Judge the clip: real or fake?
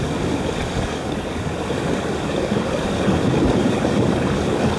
fake